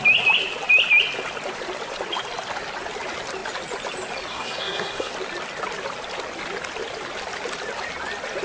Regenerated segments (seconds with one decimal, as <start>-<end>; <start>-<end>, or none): 4.3-5.1

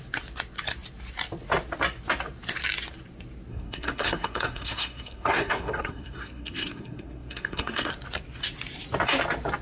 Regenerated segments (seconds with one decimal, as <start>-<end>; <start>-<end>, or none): 3.5-7.9

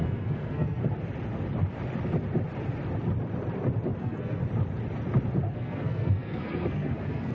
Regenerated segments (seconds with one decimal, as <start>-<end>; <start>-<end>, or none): 0.0-0.8; 4.0-4.4; 5.5-7.3

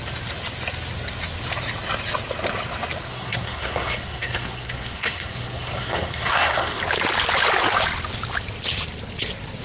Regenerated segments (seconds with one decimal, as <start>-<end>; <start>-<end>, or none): 3.1-6.8

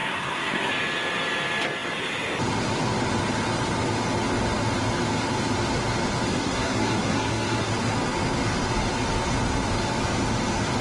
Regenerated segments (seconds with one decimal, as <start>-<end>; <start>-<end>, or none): 0.0-0.7; 6.3-7.7

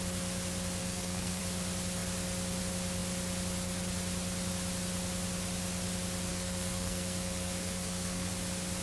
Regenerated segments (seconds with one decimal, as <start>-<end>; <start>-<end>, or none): 0.8-1.4; 6.3-8.3

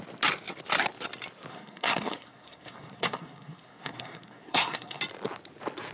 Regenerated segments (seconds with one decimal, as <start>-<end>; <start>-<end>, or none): 1.5-5.0

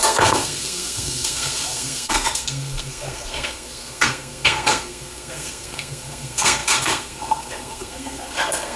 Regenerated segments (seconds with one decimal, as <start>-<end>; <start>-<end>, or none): 0.0-8.8